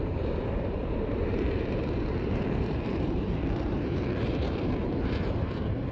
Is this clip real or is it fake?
fake